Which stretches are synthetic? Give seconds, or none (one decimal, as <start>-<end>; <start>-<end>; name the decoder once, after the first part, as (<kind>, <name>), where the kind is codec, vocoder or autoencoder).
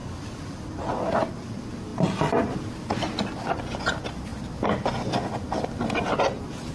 none